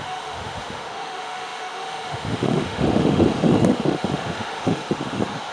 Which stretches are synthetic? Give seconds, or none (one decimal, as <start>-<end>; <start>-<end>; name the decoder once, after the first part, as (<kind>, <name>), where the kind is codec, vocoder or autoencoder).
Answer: 0.0-5.5 (autoencoder, DAC-VAE)